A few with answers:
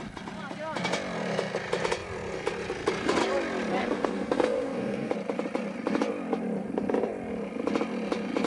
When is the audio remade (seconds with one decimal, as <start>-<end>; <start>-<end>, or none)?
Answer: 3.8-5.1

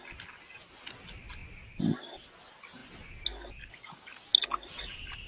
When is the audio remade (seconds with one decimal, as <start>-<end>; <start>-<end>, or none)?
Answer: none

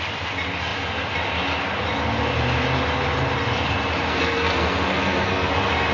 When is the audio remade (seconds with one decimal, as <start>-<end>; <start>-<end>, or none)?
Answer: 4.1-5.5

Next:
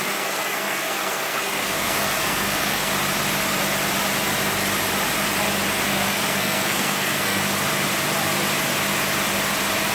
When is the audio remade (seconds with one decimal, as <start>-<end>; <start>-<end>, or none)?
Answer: 0.0-2.9; 5.9-7.4

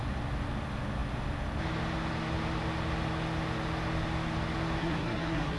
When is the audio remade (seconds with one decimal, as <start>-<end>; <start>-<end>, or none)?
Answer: 4.8-5.6

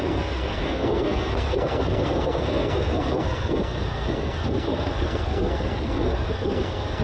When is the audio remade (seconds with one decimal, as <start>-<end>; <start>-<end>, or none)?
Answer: 0.0-7.0